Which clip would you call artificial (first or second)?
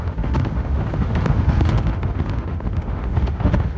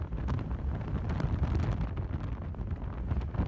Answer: first